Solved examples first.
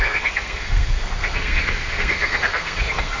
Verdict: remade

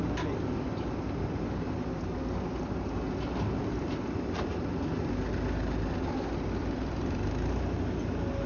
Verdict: recorded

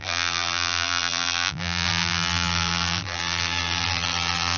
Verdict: remade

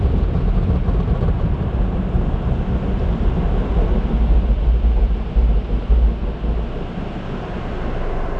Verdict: recorded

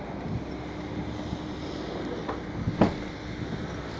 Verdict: recorded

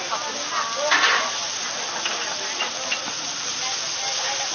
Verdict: recorded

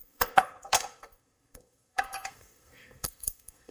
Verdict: remade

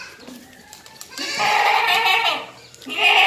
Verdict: recorded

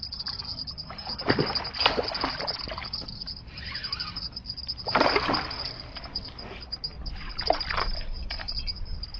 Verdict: recorded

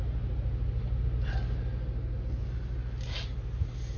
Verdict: recorded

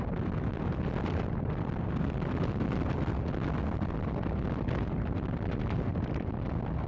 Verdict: recorded